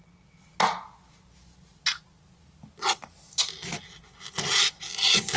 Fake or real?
real